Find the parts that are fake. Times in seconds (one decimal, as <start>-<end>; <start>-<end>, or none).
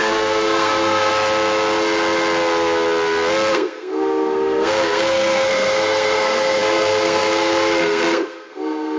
0.0-1.1; 3.5-9.0